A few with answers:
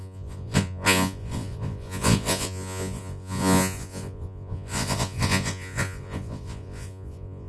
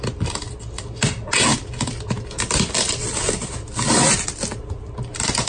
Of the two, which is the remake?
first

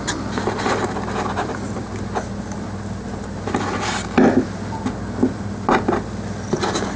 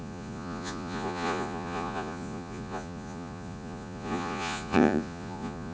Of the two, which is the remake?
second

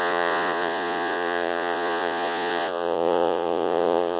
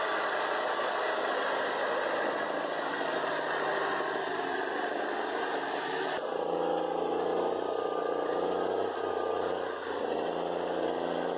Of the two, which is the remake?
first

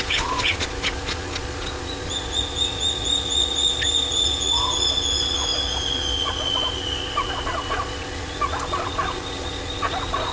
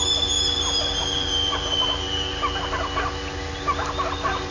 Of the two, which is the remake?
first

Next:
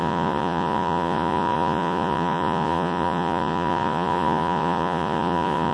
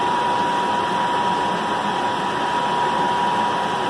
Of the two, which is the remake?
first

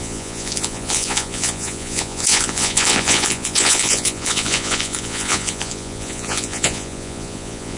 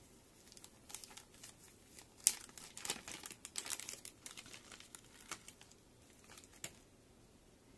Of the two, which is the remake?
first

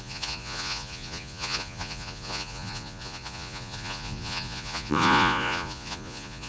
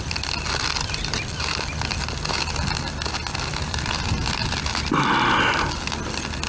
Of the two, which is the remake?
first